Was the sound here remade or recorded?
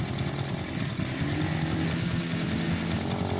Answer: recorded